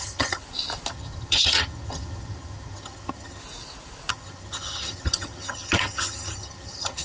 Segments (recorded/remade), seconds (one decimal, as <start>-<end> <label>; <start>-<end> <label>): 0.0-0.4 remade; 0.4-0.9 recorded; 0.9-3.4 remade; 3.4-4.1 recorded; 4.1-7.0 remade